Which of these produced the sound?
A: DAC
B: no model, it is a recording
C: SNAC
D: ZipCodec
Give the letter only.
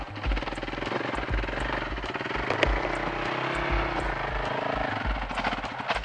B